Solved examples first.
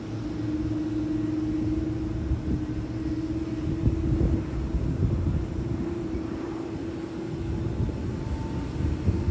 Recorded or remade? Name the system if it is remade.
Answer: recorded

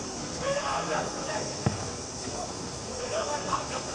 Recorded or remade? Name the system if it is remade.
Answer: remade, codec, SNAC